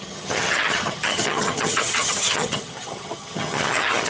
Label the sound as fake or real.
fake